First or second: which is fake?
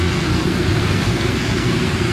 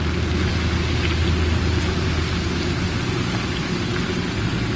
first